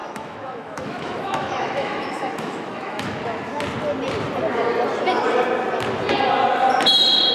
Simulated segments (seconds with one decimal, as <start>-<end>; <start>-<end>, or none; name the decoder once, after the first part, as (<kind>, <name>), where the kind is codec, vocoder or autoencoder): 0.0-3.2 (autoencoder, DAC-VAE)